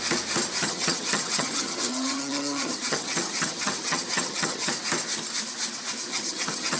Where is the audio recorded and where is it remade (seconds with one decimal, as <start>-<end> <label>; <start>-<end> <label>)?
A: 0.0-0.6 recorded; 0.6-4.7 remade; 4.7-6.1 recorded; 6.1-6.8 remade